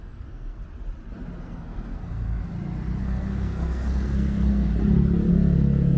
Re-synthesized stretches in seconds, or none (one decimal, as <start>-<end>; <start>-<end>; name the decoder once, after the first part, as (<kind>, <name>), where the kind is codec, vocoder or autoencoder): 0.0-0.6 (codec, SNAC); 1.4-2.4; 3.0-4.7; 5.3-6.0